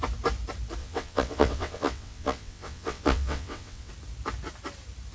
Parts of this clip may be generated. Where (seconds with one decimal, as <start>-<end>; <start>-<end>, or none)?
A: 0.8-3.9